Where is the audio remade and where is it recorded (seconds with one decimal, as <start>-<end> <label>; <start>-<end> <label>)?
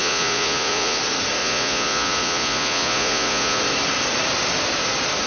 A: 0.0-1.0 remade; 1.0-1.4 recorded; 1.4-3.6 remade; 3.6-5.3 recorded